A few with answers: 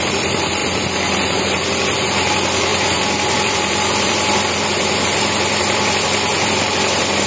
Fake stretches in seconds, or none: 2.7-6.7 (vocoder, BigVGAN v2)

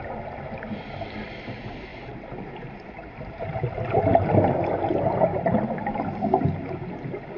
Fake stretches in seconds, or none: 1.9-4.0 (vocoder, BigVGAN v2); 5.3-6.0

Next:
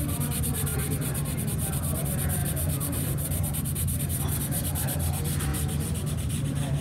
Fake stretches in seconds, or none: 2.4-4.2 (vocoder, BigVGAN v2)

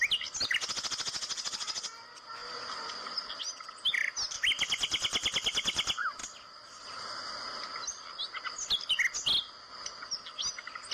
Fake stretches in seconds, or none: 2.4-3.4 (vocoder, BigVGAN v2)

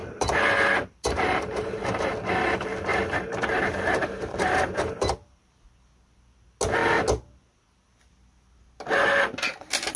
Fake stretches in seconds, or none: 0.0-2.1 (vocoder, BigVGAN v2); 2.9-5.6

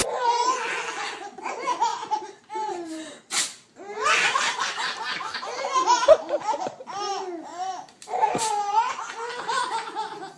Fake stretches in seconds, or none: 1.9-3.2 (vocoder, BigVGAN v2); 7.5-8.5

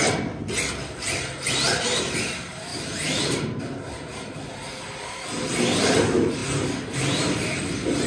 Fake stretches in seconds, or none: 2.7-3.6 (vocoder, BigVGAN v2)

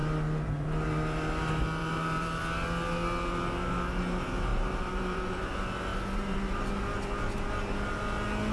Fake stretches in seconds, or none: 1.8-2.4 (vocoder, BigVGAN v2); 4.5-5.5; 5.9-6.7